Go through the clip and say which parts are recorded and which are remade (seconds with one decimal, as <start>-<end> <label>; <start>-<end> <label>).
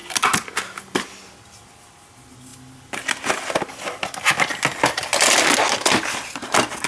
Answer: 0.0-6.9 recorded